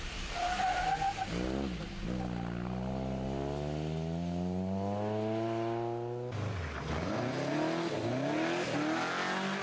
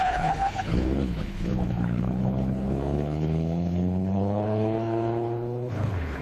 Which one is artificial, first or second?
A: second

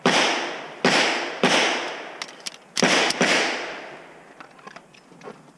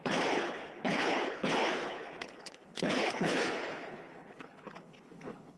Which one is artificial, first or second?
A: second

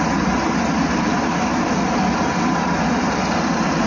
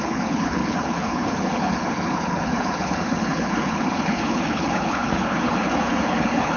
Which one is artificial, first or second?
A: second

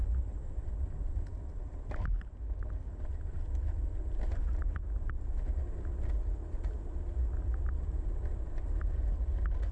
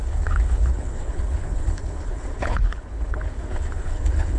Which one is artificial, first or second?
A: second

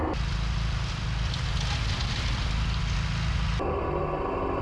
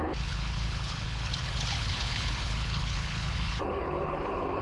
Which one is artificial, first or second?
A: second